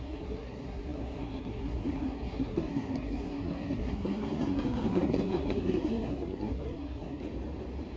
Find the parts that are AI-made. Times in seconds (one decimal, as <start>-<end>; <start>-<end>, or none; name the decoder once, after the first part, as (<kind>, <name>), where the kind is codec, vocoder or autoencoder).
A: 0.0-7.2 (codec, SNAC)